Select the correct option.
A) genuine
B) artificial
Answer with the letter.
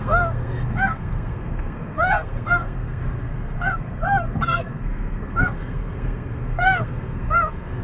B